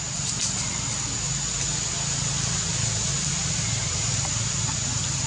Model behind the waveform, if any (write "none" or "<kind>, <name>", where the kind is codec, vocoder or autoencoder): none